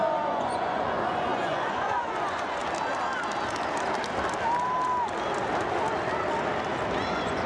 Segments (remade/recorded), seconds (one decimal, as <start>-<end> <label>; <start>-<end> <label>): 0.0-2.6 remade; 2.6-7.1 recorded; 7.1-7.5 remade